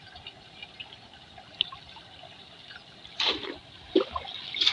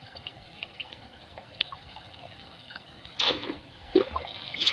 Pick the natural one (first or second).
first